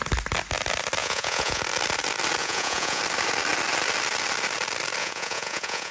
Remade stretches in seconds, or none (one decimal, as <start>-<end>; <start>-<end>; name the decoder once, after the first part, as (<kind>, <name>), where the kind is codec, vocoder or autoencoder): 1.0-1.6 (vocoder, Vocos); 2.4-3.0; 5.0-5.9